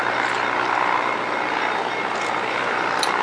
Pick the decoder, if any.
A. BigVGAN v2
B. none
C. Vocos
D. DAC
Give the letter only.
B